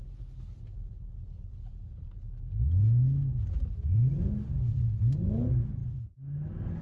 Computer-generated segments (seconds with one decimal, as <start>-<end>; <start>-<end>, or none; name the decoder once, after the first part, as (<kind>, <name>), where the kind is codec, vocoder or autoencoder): none